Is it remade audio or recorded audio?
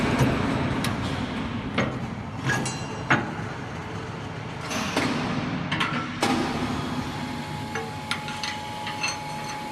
recorded